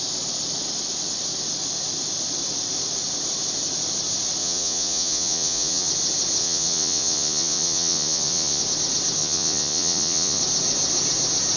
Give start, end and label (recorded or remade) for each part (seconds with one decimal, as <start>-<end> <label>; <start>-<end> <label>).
0.0-4.4 recorded; 4.4-5.9 remade; 5.9-6.4 recorded; 6.4-8.6 remade; 8.6-9.2 recorded; 9.2-10.4 remade; 10.4-11.6 recorded